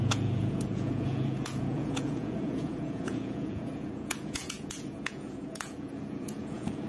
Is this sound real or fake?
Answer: fake